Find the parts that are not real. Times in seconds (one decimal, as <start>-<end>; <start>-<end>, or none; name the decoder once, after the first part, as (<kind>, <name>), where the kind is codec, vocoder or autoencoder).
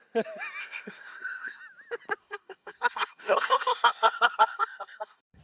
0.6-1.6 (codec, SNAC); 2.2-5.4